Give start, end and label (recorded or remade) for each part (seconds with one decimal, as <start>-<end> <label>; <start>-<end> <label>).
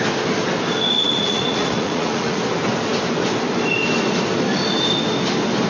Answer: 0.0-1.0 recorded; 1.0-2.4 remade; 2.4-5.7 recorded